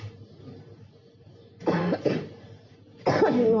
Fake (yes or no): no